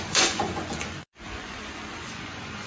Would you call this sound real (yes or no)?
no